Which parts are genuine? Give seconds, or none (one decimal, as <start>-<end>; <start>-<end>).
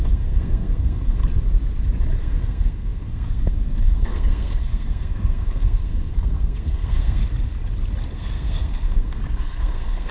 1.2-2.2; 7.2-8.1